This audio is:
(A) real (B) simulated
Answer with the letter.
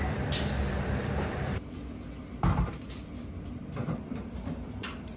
B